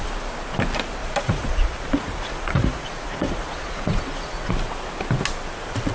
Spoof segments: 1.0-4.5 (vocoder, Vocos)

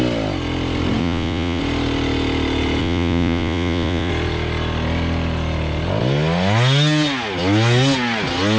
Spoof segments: 1.0-1.6 (vocoder, Vocos); 2.8-4.1

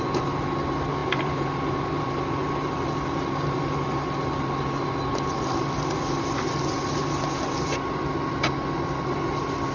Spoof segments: none

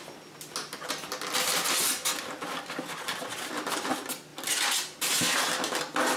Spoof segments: none

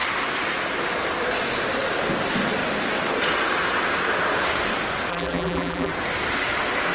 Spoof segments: 5.1-5.9 (vocoder, BigVGAN v2)

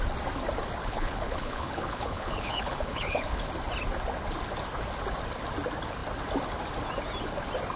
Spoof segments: 0.8-3.5 (codec, HILCodec)

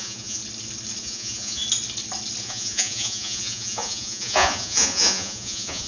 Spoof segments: 0.0-0.4 (vocoder, Vocos); 1.0-1.6; 2.4-5.9

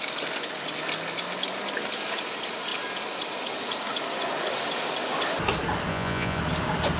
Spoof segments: 5.9-6.4 (vocoder, Vocos)